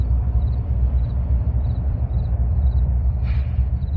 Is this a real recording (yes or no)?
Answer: no